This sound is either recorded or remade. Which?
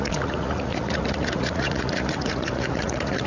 remade